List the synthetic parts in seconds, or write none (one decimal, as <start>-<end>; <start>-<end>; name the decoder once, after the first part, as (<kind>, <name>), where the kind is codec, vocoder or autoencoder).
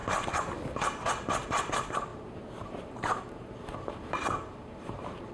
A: 2.1-5.3 (vocoder, BigVGAN v2)